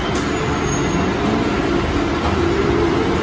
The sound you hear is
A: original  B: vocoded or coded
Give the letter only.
A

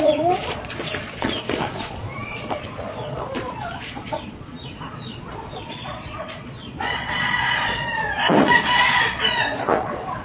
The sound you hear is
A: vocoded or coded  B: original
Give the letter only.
A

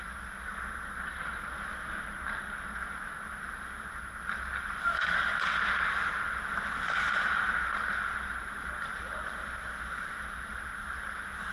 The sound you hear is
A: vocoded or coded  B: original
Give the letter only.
B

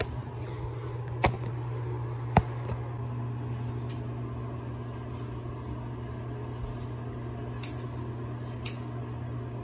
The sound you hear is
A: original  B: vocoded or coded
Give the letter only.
A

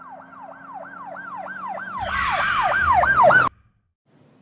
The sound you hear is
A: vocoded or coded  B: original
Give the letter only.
B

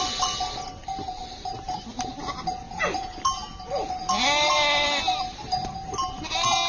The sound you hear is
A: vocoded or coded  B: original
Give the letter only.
B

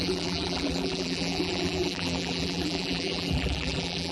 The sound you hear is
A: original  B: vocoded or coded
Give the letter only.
B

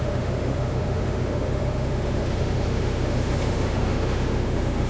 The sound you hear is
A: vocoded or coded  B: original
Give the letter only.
A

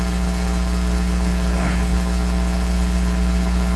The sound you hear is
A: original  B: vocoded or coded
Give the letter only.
B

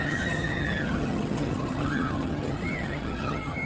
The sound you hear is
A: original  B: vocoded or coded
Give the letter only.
B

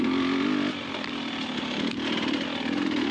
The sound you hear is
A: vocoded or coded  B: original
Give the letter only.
B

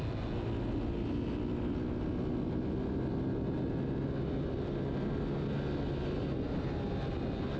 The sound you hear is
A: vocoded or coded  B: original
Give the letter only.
B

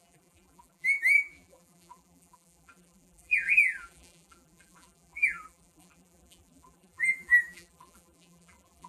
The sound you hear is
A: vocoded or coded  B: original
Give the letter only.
A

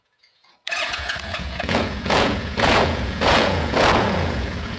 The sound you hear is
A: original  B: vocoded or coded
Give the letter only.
B